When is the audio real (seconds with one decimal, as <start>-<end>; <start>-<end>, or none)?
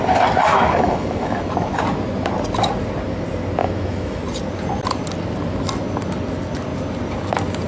0.0-0.5; 1.8-3.6; 4.2-7.7